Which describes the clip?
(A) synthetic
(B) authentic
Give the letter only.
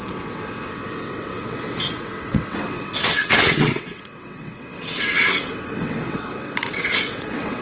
A